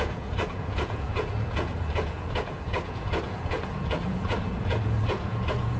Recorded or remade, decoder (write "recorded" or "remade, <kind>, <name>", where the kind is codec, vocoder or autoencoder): remade, vocoder, Vocos